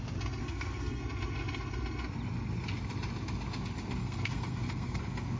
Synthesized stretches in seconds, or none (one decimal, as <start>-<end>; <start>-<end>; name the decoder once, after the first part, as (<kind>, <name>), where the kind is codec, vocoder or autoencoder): 0.4-1.0 (codec, SNAC); 4.0-5.0